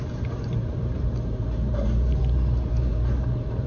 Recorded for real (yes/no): no